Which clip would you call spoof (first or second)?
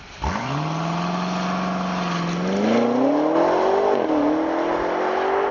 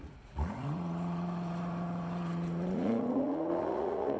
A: second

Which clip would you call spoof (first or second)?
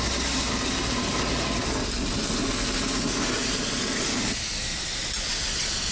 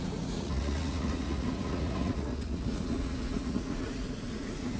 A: second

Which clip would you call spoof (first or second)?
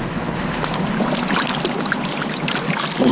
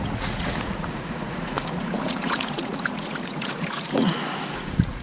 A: second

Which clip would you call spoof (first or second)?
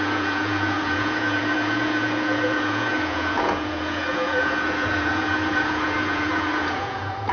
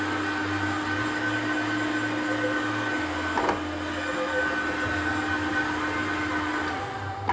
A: first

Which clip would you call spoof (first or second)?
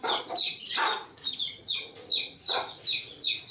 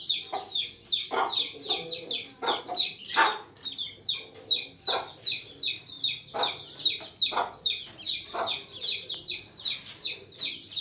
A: first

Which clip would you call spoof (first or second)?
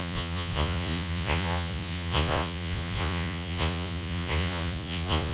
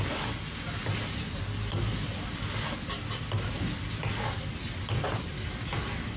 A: first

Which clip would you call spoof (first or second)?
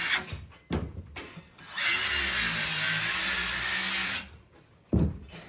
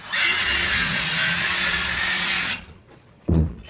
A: second